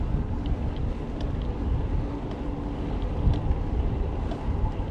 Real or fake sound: real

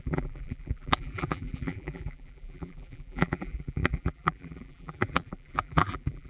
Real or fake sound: fake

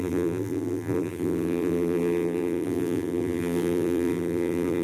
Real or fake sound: fake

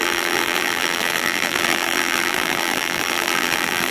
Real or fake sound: fake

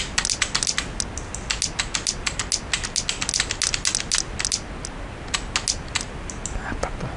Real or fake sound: real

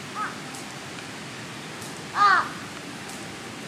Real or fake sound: real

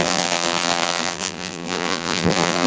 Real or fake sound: fake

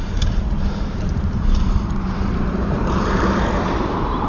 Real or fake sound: fake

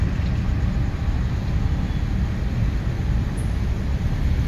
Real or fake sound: real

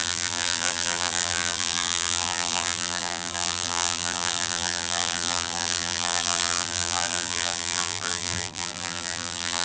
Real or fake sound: fake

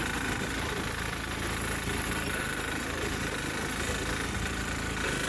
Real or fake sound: real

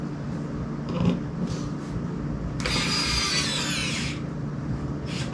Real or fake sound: real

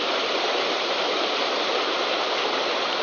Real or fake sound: fake